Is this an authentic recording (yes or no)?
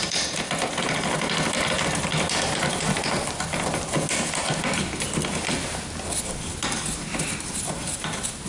yes